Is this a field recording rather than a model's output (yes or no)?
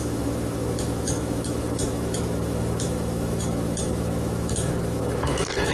no